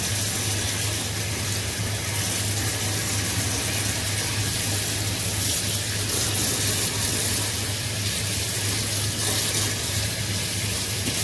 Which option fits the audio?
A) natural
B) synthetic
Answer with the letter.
A